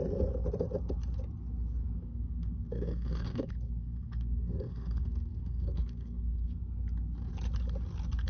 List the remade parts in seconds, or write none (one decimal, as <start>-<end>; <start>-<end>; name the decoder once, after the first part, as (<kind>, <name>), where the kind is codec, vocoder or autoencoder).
1.8-6.8 (codec, SNAC)